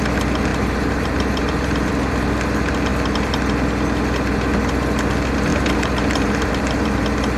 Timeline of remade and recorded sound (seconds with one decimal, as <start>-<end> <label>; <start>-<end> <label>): 0.0-0.5 recorded; 0.5-1.9 remade; 1.9-5.5 recorded; 5.5-7.0 remade; 7.0-7.4 recorded